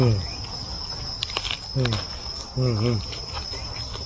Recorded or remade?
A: recorded